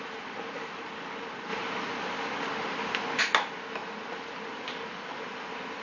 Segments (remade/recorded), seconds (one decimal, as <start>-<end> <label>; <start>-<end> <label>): 0.0-5.8 recorded